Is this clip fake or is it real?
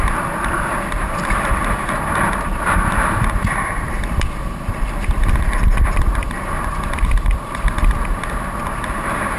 fake